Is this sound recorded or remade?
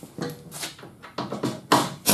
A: recorded